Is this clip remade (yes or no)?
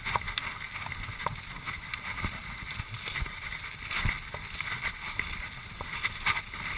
no